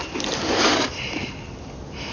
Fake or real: real